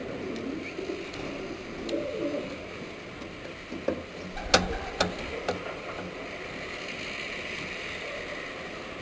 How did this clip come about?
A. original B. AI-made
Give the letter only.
A